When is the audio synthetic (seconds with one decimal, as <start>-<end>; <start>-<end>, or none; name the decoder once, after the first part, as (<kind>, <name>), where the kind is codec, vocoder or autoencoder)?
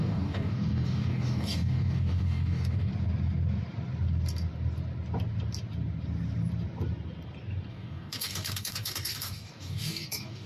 0.0-2.9 (codec, DAC); 7.7-10.5